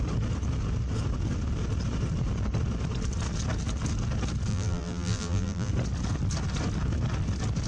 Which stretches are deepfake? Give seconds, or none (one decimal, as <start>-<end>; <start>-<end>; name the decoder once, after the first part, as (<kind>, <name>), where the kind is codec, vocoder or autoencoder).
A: 4.5-5.7 (vocoder, BigVGAN v2)